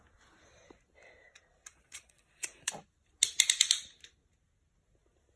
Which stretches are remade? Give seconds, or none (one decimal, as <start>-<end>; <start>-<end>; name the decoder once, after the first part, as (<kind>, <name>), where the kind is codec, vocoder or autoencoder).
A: 1.7-2.7 (vocoder, Vocos)